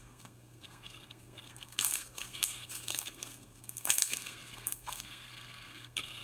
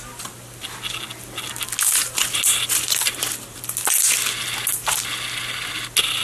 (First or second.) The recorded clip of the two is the second